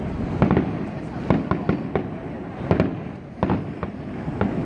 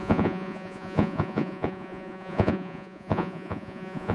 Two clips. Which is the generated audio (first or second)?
second